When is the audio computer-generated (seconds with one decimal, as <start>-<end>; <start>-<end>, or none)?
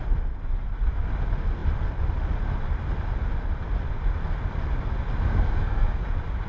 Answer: 5.3-6.1